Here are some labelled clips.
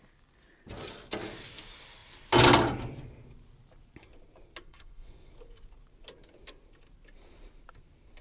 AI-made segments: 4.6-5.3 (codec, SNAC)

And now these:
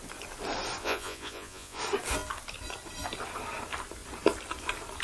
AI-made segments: 0.8-1.8 (vocoder, Vocos)

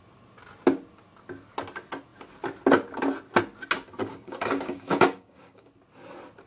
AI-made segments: 4.0-5.7 (codec, DAC)

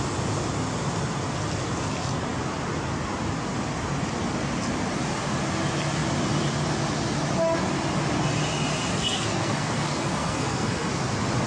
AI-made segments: 8.9-10.9 (codec, SNAC)

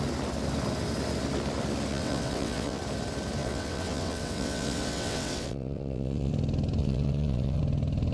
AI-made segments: 1.9-2.8 (vocoder, WaveNeXt); 3.4-6.3; 6.8-7.6